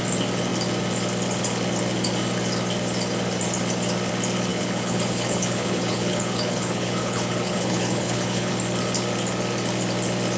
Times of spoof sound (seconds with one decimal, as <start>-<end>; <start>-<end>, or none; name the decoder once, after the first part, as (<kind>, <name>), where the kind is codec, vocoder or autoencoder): 4.5-8.5 (codec, HILCodec)